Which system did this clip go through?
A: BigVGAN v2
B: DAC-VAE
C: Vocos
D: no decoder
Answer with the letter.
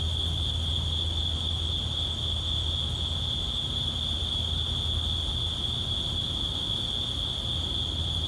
D